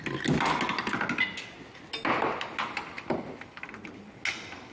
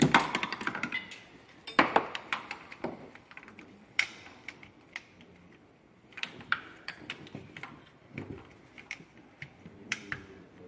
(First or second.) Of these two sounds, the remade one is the second